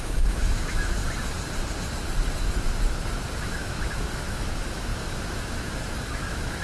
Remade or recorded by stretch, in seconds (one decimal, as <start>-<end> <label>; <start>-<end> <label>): 0.0-1.0 remade; 1.0-3.4 recorded; 3.4-6.6 remade